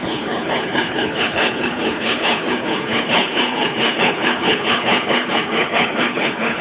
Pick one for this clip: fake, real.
fake